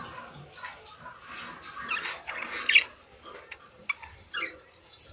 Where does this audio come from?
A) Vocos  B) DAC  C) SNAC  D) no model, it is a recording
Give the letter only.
D